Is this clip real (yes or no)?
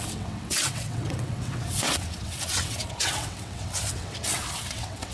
no